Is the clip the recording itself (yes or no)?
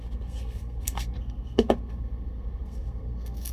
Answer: no